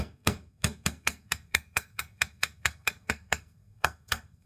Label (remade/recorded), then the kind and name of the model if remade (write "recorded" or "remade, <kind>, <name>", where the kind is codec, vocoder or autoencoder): remade, codec, SNAC